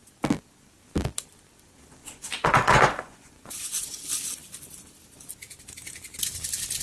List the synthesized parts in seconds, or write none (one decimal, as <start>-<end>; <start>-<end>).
2.0-4.0